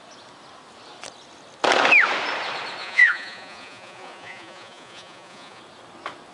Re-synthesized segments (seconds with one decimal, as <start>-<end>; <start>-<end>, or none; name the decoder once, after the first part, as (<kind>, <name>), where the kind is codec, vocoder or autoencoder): 2.8-5.6 (vocoder, Vocos)